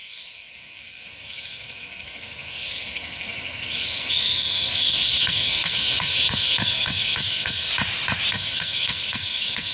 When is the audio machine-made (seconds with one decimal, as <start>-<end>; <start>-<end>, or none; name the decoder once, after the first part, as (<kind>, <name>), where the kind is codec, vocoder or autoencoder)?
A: 0.0-7.7 (codec, SNAC); 8.3-9.7